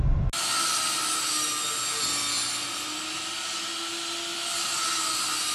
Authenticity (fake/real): real